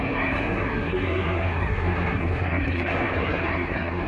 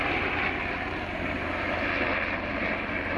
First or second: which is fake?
first